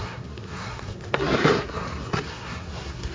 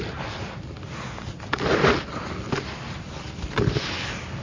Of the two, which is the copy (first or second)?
first